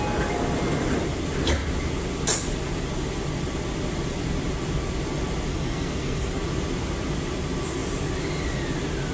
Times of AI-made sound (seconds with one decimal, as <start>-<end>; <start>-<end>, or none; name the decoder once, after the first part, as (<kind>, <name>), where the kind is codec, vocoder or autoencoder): 5.5-6.3 (codec, SNAC)